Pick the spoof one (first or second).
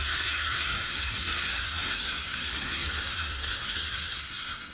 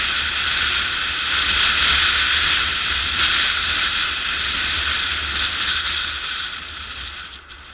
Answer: first